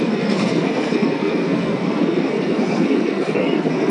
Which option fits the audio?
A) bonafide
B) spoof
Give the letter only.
B